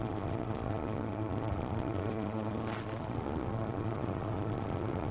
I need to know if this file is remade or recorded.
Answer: remade